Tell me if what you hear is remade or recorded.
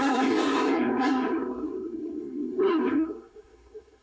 remade